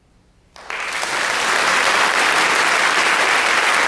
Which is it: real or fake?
real